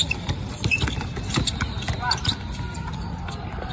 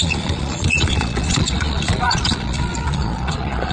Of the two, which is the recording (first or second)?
first